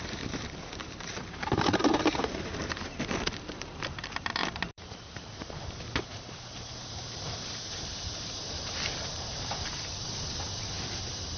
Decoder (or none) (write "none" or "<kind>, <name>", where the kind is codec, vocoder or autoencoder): vocoder, BigVGAN v2